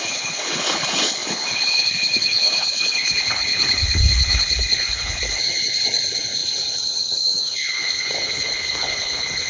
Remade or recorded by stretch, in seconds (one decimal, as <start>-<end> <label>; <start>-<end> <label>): 0.0-9.5 remade